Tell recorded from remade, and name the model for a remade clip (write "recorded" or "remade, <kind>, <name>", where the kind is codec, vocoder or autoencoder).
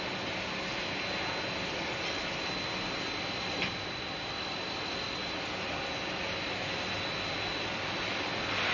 recorded